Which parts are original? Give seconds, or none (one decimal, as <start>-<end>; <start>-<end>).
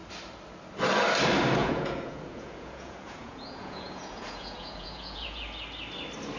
0.0-1.6; 5.4-6.4